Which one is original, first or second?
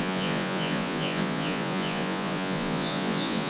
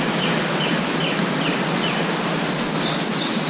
second